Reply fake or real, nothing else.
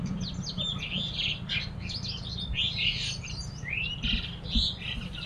real